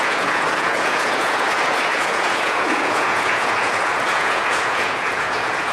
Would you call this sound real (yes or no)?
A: no